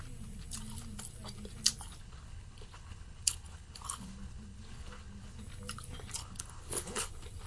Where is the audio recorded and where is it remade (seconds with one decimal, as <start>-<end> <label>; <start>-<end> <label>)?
0.0-2.0 recorded; 2.0-5.4 remade; 5.4-6.2 recorded; 6.2-7.1 remade; 7.1-7.5 recorded